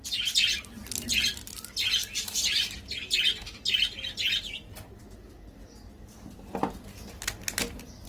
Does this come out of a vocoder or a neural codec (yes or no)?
no